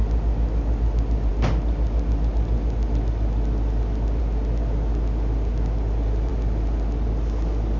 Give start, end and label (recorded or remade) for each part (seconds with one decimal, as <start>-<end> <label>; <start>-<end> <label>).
0.0-7.8 recorded